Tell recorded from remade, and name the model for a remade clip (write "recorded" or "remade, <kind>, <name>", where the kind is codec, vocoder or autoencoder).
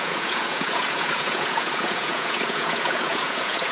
remade, vocoder, Vocos